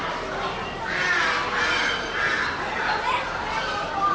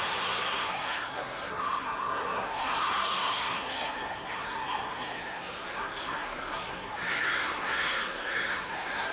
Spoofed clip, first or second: second